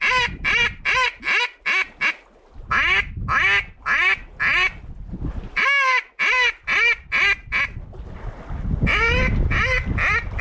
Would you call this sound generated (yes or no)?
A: no